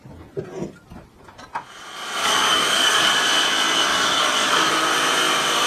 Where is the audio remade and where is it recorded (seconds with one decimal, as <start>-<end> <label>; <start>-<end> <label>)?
0.0-2.2 recorded; 2.2-3.1 remade; 3.1-3.9 recorded; 3.9-4.7 remade; 4.7-5.7 recorded